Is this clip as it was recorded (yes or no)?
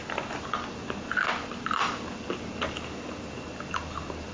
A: yes